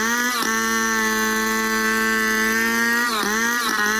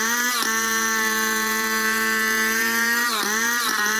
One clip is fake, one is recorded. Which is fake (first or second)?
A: second